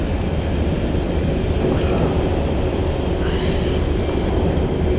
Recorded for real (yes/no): no